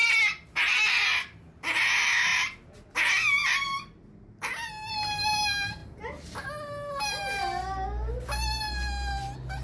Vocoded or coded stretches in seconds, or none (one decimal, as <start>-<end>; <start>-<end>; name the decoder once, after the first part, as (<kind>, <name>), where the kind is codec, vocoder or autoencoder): none